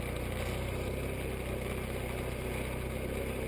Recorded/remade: recorded